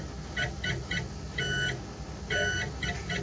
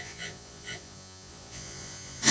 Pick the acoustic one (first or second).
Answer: first